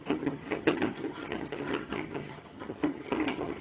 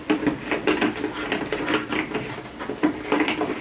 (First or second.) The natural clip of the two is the second